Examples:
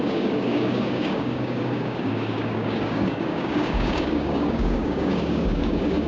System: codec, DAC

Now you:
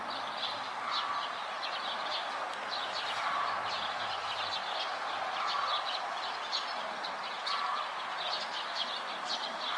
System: none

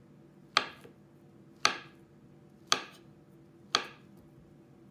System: none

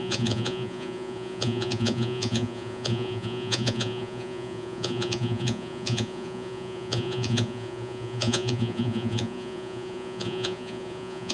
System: vocoder, Vocos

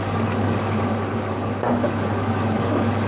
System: codec, DAC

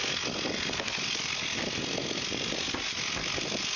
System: none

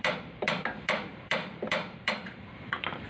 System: vocoder, BigVGAN v2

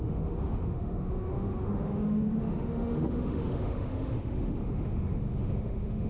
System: autoencoder, DAC-VAE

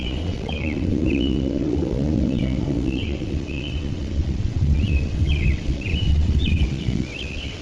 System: vocoder, WaveNeXt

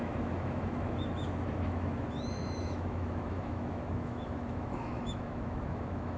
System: autoencoder, DAC-VAE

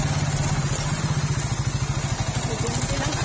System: none